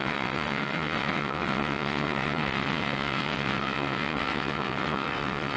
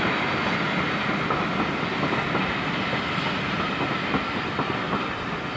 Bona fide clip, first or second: second